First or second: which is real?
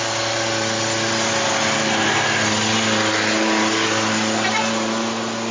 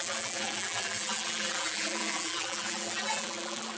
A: first